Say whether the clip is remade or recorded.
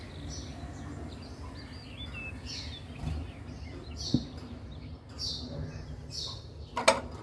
recorded